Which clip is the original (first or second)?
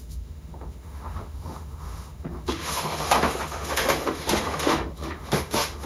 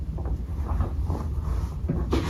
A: second